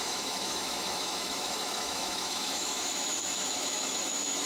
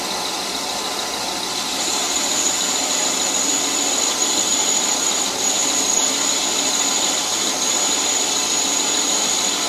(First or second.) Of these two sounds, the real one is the second